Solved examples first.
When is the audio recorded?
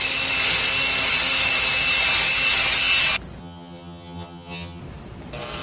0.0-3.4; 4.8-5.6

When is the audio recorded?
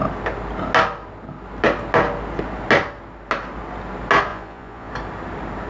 0.0-4.3; 4.9-5.7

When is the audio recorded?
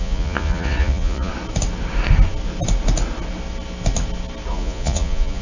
1.3-4.5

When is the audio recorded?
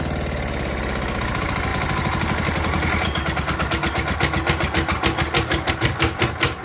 0.0-6.6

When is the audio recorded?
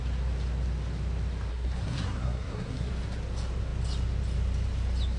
0.0-1.5; 2.9-5.2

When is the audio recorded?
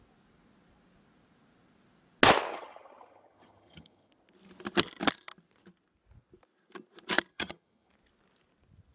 0.0-2.5; 4.1-7.3; 7.9-8.9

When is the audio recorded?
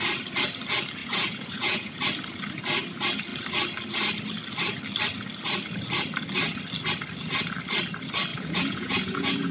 0.0-1.0; 2.0-8.3